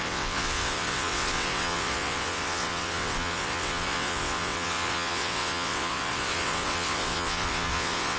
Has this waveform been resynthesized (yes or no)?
yes